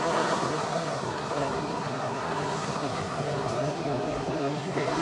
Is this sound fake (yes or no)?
yes